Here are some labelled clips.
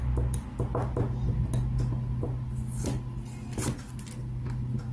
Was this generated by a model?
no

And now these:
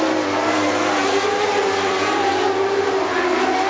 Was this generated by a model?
no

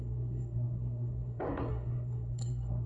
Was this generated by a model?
yes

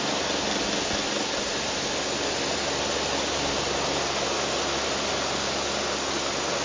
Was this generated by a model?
no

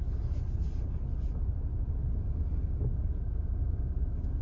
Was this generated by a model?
no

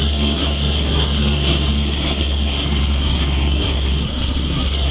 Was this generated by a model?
yes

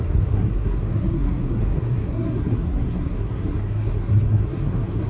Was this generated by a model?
yes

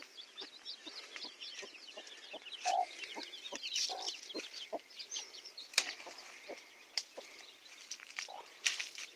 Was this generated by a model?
no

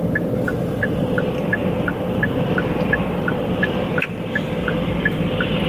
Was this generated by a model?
no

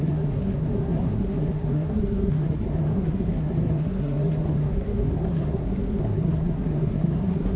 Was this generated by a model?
yes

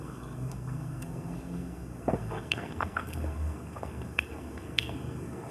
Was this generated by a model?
yes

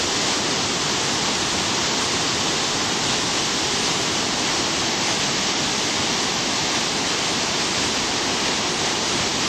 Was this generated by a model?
no